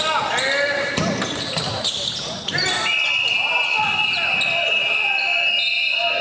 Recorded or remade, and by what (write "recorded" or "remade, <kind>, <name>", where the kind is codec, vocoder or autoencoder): remade, vocoder, BigVGAN v2